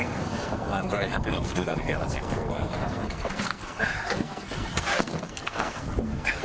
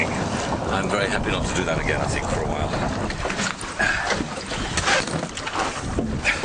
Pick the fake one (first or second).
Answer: first